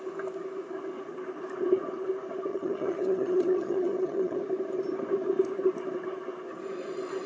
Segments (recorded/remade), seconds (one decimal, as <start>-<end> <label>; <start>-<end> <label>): 0.0-2.5 recorded; 2.5-4.4 remade; 4.4-7.3 recorded